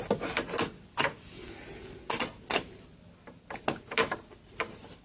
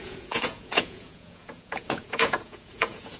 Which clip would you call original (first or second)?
first